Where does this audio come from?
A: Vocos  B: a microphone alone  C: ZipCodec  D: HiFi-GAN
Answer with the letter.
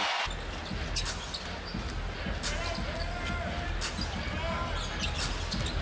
B